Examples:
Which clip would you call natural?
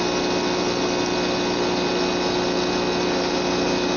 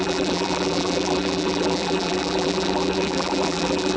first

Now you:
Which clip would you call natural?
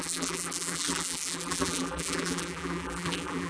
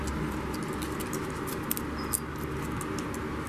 second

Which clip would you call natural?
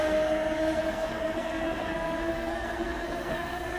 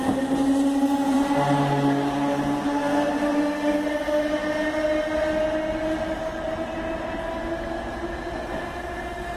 second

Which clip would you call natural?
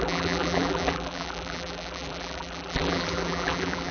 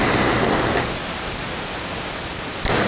second